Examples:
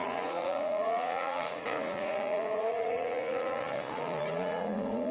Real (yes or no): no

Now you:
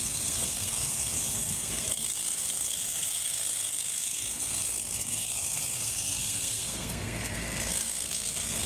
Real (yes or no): no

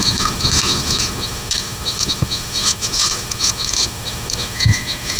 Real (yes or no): no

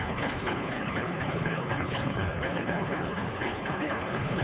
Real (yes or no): no